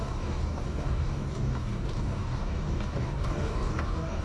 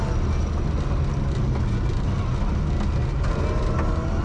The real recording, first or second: second